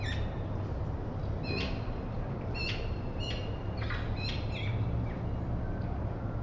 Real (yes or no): yes